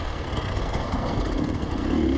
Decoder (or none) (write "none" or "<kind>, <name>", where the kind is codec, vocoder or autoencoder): codec, SNAC